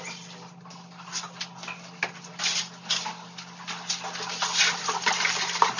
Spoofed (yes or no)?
no